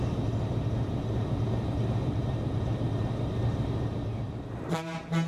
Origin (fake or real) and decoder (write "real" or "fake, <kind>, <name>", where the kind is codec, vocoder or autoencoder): fake, vocoder, BigVGAN v2